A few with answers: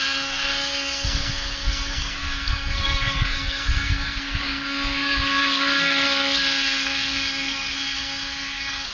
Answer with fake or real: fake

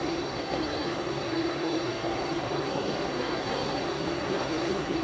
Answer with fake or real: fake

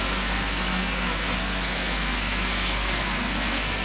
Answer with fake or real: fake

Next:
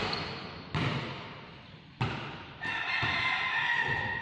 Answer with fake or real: real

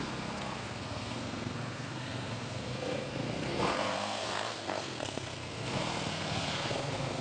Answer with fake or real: fake